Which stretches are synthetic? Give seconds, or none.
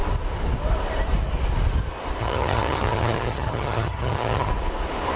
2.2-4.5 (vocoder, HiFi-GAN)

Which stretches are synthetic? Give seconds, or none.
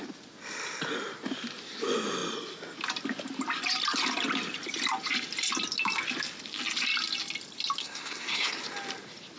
7.8-8.6 (codec, SNAC)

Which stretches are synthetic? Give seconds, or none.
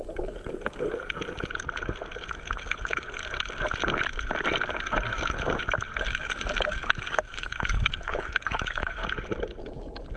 0.0-0.9 (codec, DAC); 2.3-3.2; 6.0-9.0; 9.6-10.2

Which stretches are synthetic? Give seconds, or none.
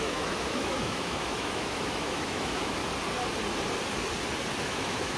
0.0-2.8 (autoencoder, DAC-VAE); 4.6-5.2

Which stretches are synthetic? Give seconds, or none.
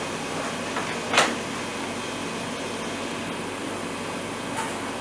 none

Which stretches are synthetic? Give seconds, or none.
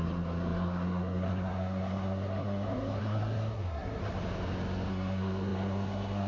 0.0-4.0 (codec, SNAC); 4.9-6.3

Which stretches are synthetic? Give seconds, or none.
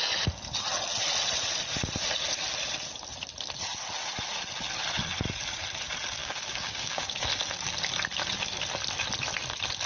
6.2-7.2 (codec, DAC)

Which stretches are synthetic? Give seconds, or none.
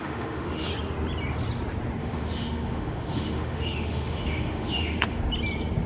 0.0-0.7 (autoencoder, DAC-VAE); 2.0-5.2